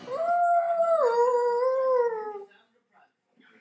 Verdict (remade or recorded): recorded